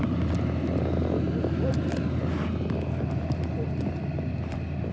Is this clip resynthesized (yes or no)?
no